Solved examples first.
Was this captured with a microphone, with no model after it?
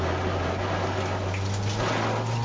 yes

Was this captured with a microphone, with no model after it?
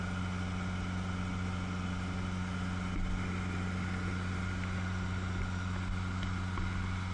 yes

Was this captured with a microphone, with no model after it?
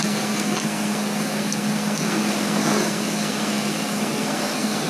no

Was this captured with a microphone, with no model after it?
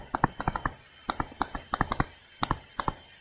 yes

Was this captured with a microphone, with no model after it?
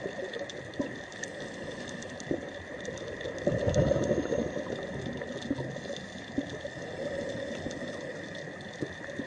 yes